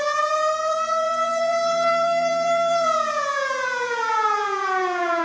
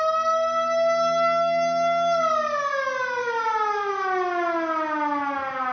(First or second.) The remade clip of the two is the first